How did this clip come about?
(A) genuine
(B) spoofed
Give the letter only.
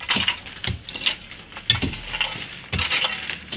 A